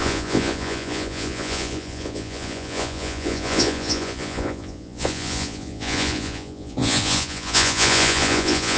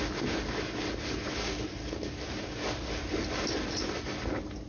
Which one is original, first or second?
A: second